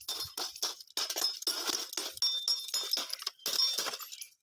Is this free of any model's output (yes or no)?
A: yes